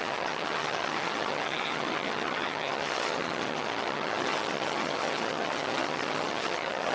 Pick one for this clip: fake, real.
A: fake